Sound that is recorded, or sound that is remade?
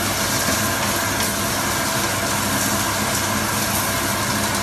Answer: recorded